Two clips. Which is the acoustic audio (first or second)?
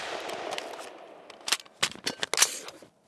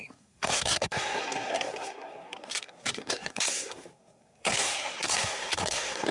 first